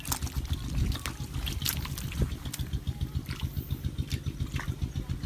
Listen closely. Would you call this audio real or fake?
real